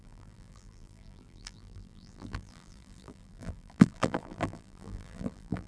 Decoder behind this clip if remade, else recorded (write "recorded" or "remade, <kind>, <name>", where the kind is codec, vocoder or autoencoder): remade, vocoder, BigVGAN v2